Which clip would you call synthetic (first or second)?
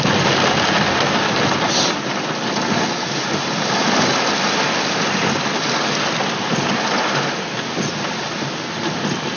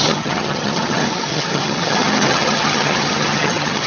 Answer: second